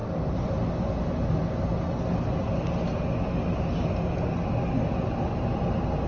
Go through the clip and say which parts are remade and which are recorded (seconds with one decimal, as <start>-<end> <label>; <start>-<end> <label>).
0.0-6.1 recorded

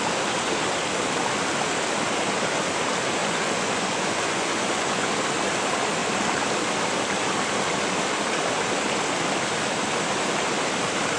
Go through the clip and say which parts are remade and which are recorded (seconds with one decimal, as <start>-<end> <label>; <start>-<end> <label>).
0.0-3.2 recorded; 3.2-5.1 remade; 5.1-11.2 recorded

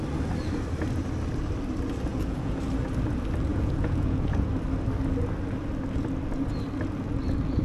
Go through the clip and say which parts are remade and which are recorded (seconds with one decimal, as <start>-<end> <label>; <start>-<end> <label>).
0.0-2.1 recorded; 2.1-2.6 remade; 2.6-3.5 recorded; 3.5-4.5 remade; 4.5-7.6 recorded

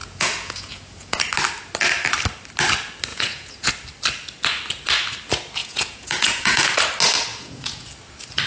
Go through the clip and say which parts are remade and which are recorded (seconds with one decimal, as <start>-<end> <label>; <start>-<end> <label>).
0.0-1.2 remade; 1.2-3.1 recorded; 3.1-3.7 remade; 3.7-5.6 recorded; 5.6-6.7 remade; 6.7-7.3 recorded; 7.3-7.9 remade; 7.9-8.5 recorded

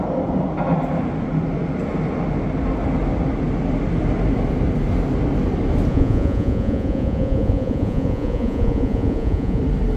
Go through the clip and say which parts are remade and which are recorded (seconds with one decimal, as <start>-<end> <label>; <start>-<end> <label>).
0.0-5.9 recorded; 5.9-9.6 remade; 9.6-10.0 recorded